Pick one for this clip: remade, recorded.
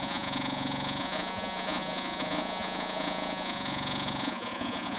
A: remade